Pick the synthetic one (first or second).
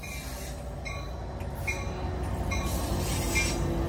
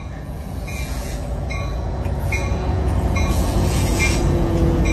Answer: second